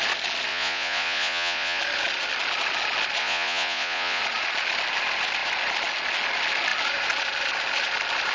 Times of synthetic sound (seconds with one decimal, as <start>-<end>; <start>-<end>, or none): 0.5-1.8; 3.2-4.2